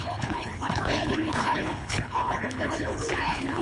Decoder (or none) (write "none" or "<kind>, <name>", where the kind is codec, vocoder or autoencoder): codec, HILCodec